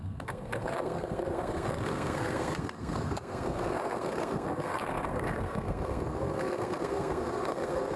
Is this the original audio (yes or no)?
no